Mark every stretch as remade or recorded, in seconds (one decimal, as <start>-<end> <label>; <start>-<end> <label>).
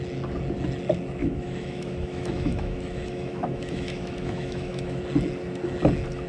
0.0-1.2 recorded; 1.2-5.0 remade; 5.0-6.3 recorded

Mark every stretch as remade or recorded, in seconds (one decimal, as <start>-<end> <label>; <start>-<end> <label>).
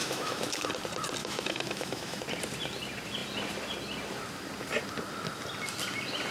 0.0-0.7 remade; 0.7-1.2 recorded; 1.2-2.2 remade; 2.2-6.3 recorded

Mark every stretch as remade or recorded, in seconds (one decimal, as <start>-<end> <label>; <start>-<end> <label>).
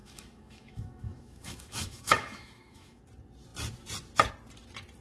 0.0-3.0 remade; 3.0-5.0 recorded